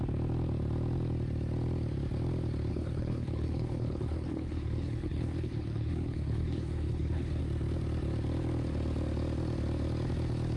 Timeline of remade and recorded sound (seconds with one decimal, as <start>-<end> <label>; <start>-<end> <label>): 0.0-2.7 recorded; 2.7-7.4 remade; 7.4-10.6 recorded